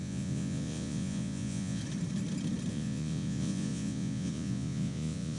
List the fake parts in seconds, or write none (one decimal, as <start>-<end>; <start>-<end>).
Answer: 0.0-1.8; 2.7-5.4